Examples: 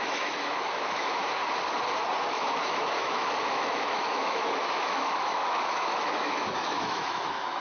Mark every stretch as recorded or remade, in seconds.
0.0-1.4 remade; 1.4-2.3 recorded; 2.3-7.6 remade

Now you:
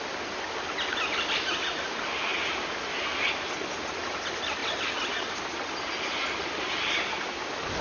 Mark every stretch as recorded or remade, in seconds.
0.0-7.8 recorded